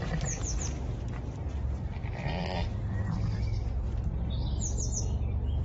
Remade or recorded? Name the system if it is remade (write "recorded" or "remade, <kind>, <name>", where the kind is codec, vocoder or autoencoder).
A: recorded